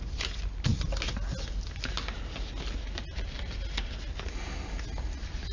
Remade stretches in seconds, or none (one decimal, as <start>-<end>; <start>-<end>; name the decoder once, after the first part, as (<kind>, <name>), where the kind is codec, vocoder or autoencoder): none